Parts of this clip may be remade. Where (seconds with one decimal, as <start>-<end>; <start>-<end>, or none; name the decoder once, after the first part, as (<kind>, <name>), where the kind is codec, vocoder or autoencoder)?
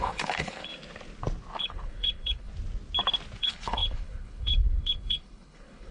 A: 0.0-0.7 (codec, HILCodec); 1.6-2.5; 3.4-5.9